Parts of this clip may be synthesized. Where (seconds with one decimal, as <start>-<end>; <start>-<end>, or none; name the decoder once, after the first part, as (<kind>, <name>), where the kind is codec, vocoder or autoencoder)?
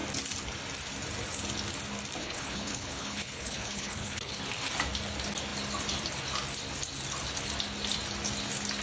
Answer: 2.2-4.4 (codec, HILCodec)